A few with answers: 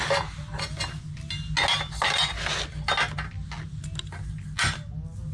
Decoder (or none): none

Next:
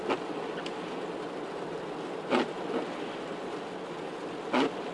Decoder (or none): none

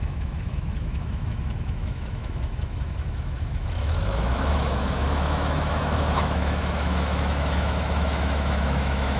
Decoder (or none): autoencoder, DAC-VAE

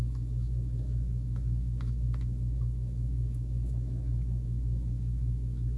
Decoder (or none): autoencoder, DAC-VAE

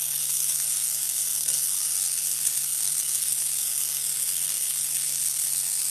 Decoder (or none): codec, SNAC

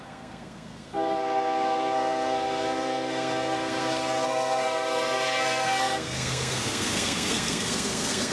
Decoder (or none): codec, SNAC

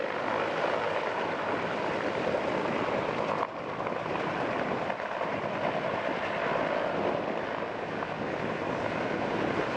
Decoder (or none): none